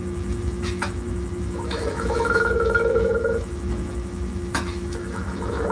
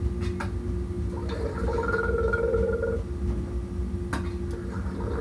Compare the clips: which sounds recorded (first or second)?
second